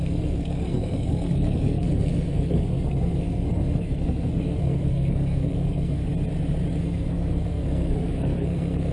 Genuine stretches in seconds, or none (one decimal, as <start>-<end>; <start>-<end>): 6.0-6.7